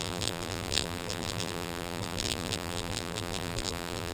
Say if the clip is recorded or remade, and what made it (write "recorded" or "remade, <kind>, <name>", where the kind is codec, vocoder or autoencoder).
remade, vocoder, BigVGAN v2